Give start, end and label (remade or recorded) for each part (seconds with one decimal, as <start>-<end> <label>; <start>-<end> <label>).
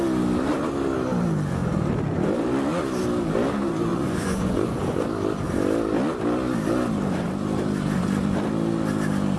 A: 0.0-3.9 recorded; 3.9-5.0 remade; 5.0-9.4 recorded